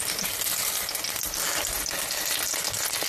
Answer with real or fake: real